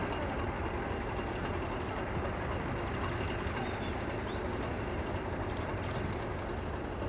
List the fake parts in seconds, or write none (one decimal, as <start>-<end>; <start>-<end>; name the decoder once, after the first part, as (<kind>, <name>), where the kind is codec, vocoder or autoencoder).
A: none

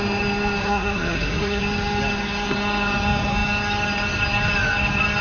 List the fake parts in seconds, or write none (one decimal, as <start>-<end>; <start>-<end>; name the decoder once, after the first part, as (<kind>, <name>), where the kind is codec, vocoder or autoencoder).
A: 0.6-1.6 (codec, SNAC)

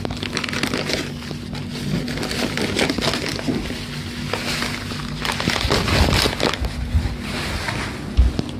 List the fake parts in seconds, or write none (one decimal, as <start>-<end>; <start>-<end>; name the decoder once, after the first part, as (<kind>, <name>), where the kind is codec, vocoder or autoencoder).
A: none

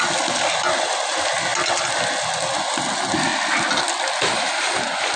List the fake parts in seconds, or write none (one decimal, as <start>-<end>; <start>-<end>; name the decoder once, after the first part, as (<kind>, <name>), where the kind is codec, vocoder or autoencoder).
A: none

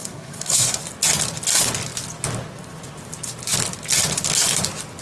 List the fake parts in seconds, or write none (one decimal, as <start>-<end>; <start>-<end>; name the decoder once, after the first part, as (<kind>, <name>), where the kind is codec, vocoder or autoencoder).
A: 0.0-0.8 (codec, SNAC)

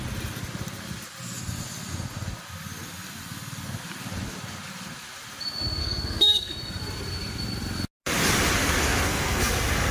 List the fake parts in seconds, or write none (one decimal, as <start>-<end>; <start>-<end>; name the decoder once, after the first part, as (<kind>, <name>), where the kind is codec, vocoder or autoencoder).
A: 5.8-6.5 (codec, SNAC); 8.6-9.5